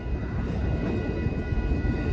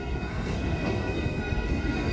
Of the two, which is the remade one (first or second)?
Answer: second